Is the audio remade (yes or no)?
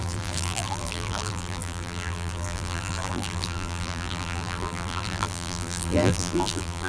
yes